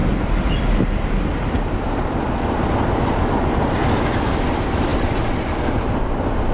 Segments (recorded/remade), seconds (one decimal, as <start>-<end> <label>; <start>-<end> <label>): 0.0-6.5 recorded